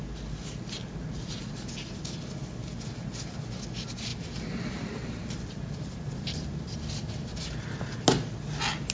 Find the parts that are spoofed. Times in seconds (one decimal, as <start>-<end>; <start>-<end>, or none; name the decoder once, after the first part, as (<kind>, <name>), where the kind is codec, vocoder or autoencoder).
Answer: 0.8-2.3 (vocoder, BigVGAN v2); 4.1-8.0